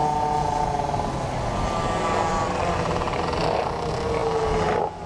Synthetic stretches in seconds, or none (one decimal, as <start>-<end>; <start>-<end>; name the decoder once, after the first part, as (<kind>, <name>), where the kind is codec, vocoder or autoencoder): none